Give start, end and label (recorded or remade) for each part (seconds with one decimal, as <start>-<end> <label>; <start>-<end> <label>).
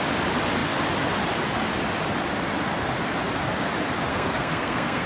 0.0-4.1 recorded; 4.1-5.1 remade